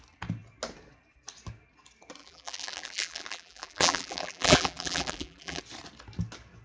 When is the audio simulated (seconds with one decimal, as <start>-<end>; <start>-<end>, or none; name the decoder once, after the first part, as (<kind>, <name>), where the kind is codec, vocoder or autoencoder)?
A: 2.2-5.6 (vocoder, BigVGAN v2)